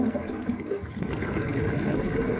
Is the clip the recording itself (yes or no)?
no